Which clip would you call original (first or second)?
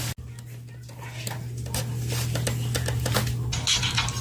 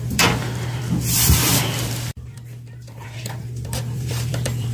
first